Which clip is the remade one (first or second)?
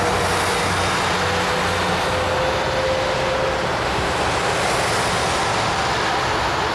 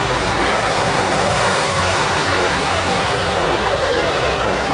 second